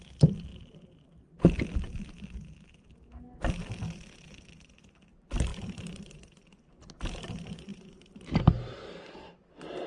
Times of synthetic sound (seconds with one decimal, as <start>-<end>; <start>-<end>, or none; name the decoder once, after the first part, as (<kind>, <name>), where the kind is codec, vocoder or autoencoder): 5.5-6.1 (vocoder, BigVGAN v2); 7.7-9.1